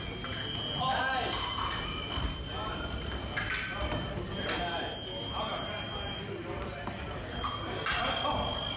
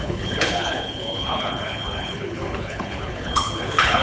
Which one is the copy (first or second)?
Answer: second